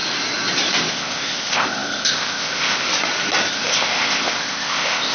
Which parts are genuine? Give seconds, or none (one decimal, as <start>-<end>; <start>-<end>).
0.0-0.9; 2.9-3.5